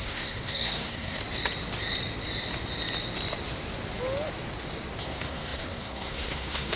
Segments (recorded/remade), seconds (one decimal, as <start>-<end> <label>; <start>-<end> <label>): 0.0-1.2 remade; 1.2-5.0 recorded; 5.0-6.8 remade